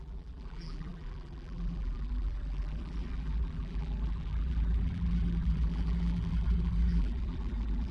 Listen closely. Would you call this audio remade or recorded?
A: remade